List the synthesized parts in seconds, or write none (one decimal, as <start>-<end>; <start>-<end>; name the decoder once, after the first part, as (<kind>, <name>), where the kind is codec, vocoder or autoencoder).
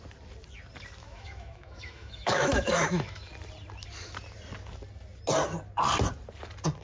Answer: 1.0-3.3 (autoencoder, DAC-VAE)